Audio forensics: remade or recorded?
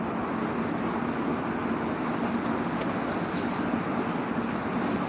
recorded